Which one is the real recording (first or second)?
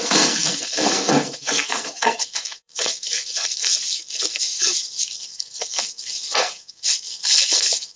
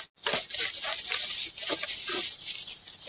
second